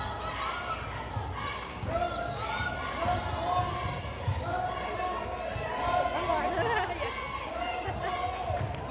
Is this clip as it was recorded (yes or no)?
yes